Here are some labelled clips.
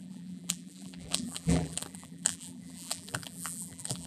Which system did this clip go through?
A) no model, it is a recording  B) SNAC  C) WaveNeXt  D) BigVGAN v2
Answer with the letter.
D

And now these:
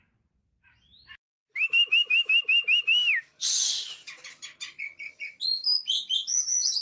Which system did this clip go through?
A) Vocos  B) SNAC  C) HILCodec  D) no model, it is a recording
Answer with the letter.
D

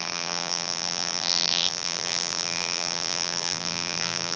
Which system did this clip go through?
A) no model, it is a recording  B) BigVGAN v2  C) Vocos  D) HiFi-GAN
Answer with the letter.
B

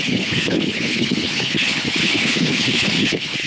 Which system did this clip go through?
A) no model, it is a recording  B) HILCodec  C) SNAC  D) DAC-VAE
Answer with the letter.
B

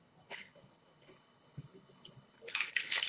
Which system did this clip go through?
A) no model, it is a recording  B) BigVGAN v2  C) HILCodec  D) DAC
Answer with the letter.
C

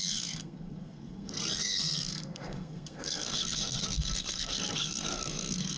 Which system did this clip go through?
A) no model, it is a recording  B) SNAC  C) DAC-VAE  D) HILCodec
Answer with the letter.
B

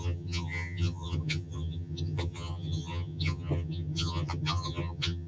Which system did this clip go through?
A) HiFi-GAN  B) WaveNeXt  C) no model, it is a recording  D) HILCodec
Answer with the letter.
A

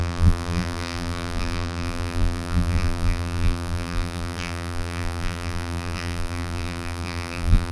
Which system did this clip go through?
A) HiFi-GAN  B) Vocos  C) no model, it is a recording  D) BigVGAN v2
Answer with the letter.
D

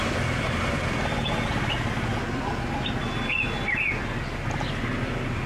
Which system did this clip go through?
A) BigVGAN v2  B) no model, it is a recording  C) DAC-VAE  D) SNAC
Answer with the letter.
B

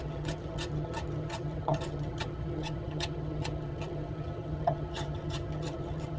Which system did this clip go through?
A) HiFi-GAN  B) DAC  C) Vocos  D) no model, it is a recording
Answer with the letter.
A